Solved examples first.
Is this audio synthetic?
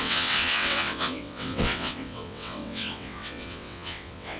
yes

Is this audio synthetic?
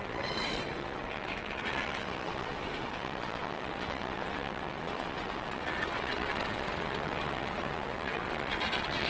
yes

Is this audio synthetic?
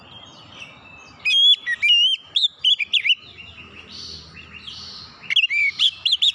no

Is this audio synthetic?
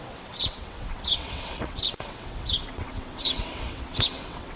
yes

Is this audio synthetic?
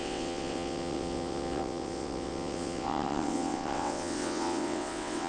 yes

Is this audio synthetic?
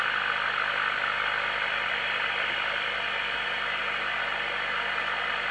no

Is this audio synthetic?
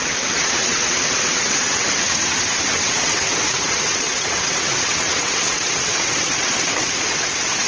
yes